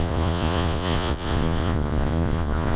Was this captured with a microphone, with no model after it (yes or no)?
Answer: no